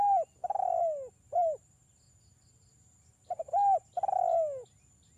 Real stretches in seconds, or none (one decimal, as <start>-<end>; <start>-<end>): 0.0-5.2